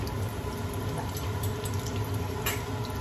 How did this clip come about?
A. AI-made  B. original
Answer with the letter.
B